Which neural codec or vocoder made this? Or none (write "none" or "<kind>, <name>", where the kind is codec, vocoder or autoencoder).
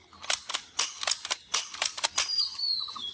none